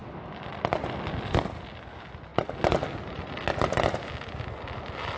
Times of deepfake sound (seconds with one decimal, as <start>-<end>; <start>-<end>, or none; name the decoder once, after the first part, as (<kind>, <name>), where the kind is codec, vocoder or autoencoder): none